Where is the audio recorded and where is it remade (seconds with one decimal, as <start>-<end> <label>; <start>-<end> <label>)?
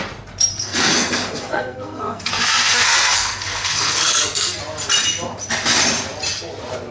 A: 0.0-0.5 recorded; 0.5-4.6 remade; 4.6-6.9 recorded